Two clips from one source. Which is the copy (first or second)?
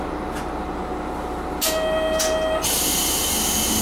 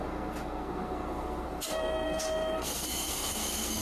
second